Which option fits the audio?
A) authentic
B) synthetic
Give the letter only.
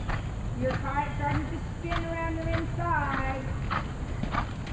A